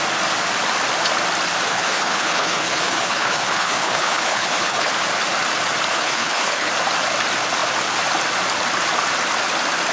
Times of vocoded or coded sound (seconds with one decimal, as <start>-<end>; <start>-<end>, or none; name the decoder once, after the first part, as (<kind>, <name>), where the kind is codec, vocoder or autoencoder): 1.7-4.9 (codec, HILCodec); 5.9-6.7